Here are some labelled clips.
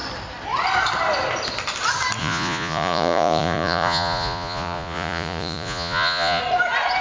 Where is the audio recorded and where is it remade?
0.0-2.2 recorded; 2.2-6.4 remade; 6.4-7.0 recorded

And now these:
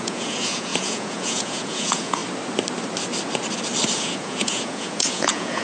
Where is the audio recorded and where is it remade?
0.0-2.2 remade; 2.2-4.0 recorded; 4.0-5.6 remade

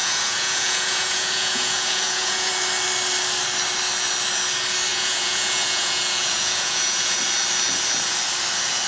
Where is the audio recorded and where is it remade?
0.0-2.5 remade; 2.5-4.9 recorded; 4.9-7.2 remade; 7.2-8.9 recorded

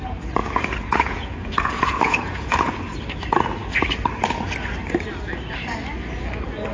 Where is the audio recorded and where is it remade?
0.0-0.4 recorded; 0.4-2.7 remade; 2.7-6.7 recorded

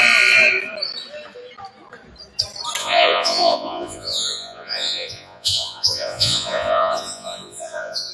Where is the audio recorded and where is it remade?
0.0-2.8 recorded; 2.8-8.1 remade

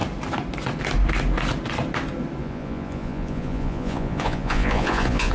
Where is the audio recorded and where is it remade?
0.0-2.4 recorded; 2.4-5.3 remade